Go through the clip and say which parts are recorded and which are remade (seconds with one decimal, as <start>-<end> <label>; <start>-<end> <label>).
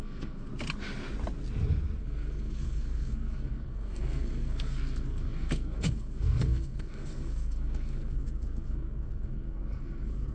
0.0-0.5 remade; 0.5-2.0 recorded; 2.0-10.3 remade